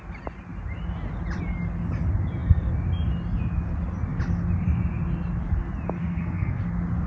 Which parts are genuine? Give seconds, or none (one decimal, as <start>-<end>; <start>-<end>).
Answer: 0.0-6.0; 6.6-7.1